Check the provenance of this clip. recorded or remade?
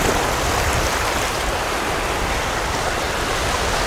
recorded